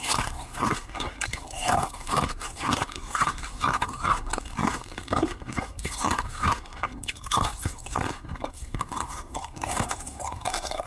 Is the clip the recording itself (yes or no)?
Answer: no